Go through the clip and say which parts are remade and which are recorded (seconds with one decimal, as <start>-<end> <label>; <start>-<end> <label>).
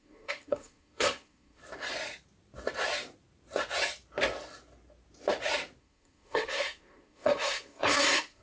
0.0-1.6 remade; 1.6-5.8 recorded; 5.8-8.4 remade